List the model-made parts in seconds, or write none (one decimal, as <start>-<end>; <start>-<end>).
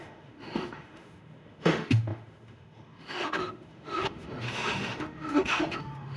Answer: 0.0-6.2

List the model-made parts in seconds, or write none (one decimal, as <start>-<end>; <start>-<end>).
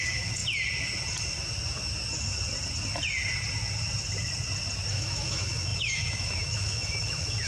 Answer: 0.0-0.4; 4.9-7.5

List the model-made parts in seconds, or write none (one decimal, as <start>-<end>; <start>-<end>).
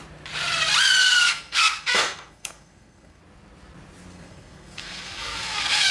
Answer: 1.0-3.2; 4.1-5.9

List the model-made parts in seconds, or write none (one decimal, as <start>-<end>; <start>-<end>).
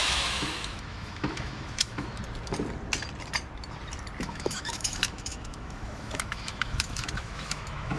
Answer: 0.0-2.2; 4.2-8.0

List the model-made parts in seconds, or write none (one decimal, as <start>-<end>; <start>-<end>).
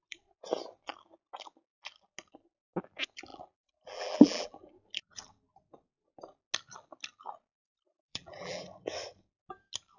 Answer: 3.3-4.7; 7.7-8.6